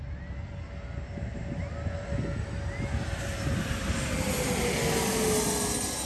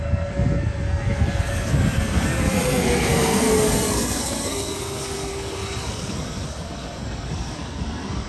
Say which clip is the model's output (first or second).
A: second